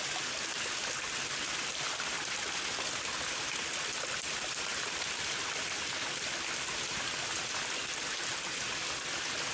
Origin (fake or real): real